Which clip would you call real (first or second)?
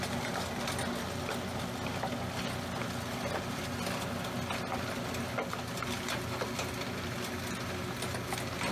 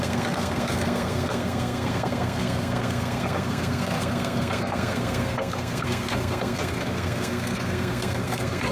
first